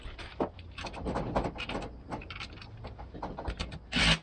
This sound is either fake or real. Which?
real